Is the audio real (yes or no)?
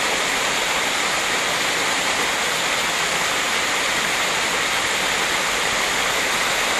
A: yes